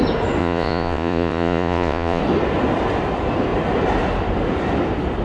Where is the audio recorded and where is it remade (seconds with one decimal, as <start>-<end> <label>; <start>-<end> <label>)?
0.0-0.4 recorded; 0.4-2.2 remade; 2.2-5.2 recorded